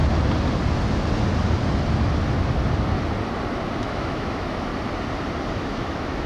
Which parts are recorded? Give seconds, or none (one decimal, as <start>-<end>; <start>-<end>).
0.0-3.8; 4.7-5.5